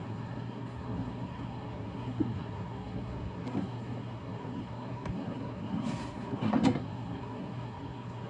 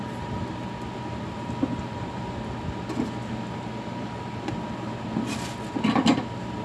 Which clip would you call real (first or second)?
second